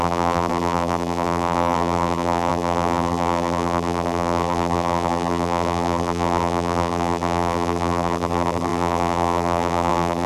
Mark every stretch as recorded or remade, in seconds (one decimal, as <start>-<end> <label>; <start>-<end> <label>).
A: 0.0-10.3 remade